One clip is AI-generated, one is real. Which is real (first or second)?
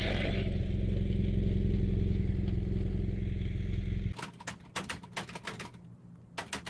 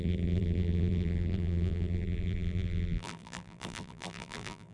first